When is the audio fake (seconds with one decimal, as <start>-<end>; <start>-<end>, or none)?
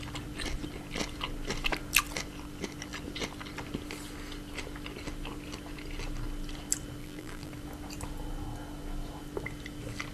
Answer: 7.0-7.5